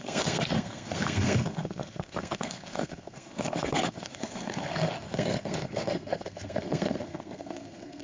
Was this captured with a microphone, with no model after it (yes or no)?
no